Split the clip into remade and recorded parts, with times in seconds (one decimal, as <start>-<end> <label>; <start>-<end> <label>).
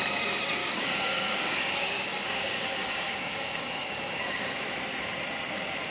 0.0-0.6 recorded; 0.6-4.1 remade; 4.1-5.9 recorded